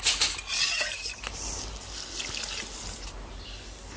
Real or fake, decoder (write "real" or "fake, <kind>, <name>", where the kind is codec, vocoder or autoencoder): real